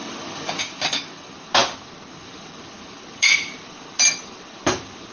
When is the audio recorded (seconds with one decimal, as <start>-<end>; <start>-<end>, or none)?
0.0-5.1